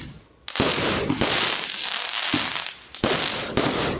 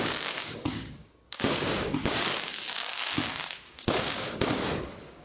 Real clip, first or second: first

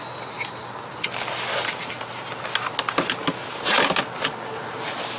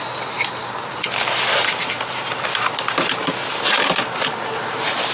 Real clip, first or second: first